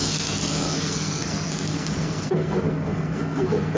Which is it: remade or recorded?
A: remade